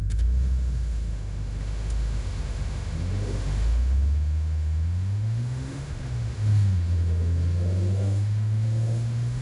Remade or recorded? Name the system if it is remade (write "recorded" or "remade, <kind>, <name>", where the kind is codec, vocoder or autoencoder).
remade, autoencoder, DAC-VAE